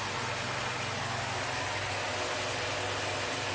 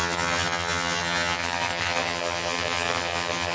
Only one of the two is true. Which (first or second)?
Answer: first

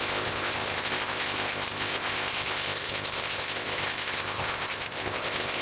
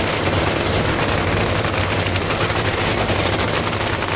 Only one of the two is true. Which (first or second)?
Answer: second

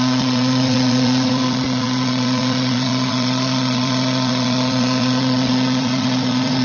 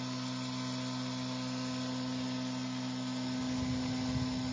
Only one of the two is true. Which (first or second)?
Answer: second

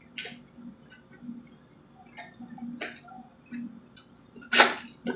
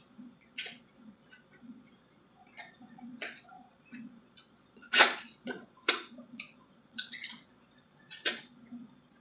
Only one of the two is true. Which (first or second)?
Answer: first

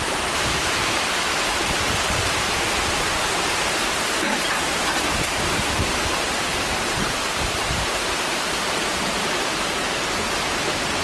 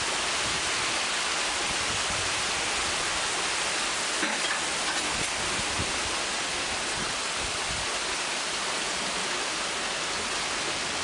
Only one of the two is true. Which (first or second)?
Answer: second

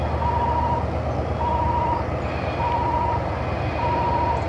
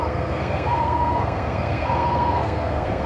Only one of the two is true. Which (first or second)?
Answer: first